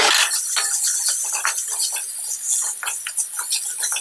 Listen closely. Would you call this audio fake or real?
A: real